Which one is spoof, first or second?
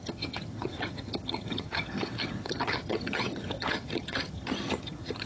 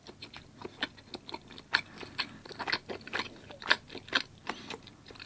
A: first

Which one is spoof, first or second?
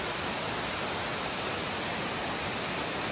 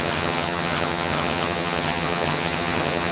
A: second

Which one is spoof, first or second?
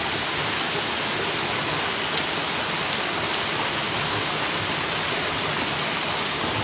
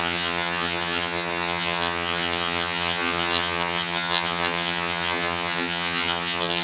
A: second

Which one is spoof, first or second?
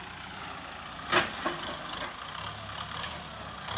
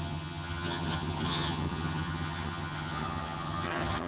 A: second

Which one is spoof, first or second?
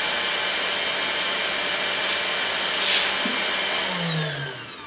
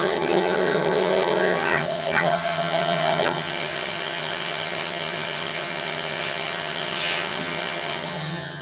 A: second